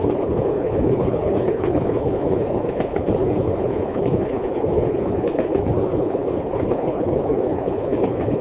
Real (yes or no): no